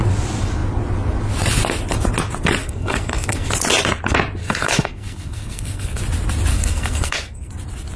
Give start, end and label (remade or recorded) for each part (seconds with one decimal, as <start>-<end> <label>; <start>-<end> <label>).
0.0-2.6 recorded; 2.6-3.5 remade; 3.5-4.4 recorded; 4.4-6.0 remade; 6.0-6.5 recorded; 6.5-7.5 remade; 7.5-8.0 recorded